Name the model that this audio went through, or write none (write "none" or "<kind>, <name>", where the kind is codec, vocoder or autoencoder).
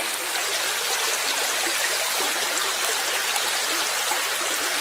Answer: none